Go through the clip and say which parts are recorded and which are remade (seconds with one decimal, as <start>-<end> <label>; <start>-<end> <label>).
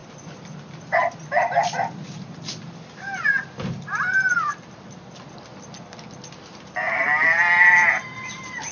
0.0-8.7 remade